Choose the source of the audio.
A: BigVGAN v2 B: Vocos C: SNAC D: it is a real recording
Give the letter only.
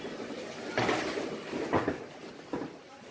D